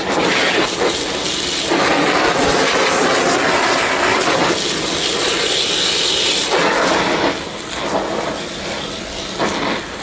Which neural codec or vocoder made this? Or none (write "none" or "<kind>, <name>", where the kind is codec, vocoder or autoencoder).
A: none